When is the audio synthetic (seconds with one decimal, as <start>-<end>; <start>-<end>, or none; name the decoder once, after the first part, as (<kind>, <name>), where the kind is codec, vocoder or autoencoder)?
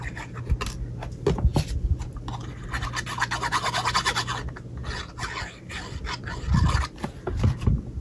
none